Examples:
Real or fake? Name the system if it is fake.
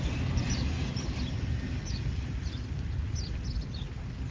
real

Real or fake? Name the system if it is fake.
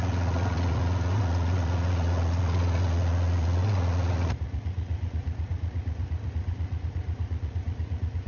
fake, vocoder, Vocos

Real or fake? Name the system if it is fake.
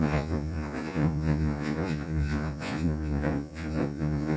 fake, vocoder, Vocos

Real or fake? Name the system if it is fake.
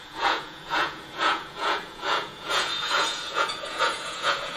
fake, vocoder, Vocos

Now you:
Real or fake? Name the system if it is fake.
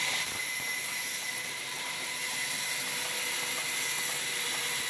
real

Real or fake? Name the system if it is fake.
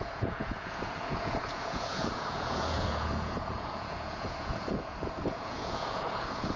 fake, vocoder, Vocos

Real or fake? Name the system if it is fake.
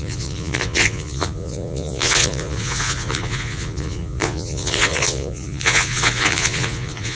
fake, vocoder, Vocos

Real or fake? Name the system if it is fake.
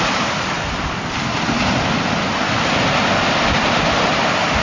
real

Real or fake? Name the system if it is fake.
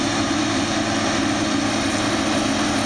real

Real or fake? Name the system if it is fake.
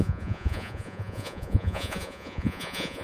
fake, vocoder, Vocos